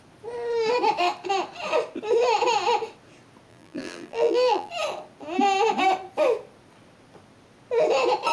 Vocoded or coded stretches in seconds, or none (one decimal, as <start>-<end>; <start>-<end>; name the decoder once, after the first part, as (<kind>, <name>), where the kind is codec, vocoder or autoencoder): 3.5-4.7 (vocoder, BigVGAN v2)